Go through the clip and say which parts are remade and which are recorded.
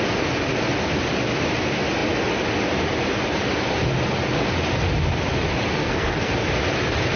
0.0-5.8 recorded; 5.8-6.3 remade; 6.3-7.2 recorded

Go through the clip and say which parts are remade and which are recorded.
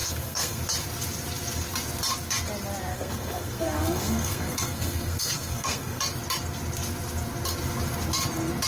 0.0-0.6 remade; 0.6-2.9 recorded; 2.9-6.0 remade; 6.0-8.7 recorded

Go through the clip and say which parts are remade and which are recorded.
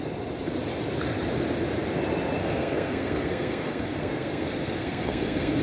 0.0-2.4 recorded; 2.4-5.6 remade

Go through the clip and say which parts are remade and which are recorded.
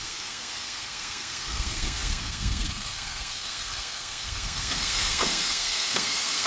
0.0-6.5 remade